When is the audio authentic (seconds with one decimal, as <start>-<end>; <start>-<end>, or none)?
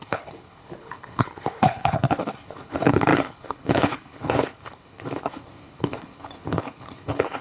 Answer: none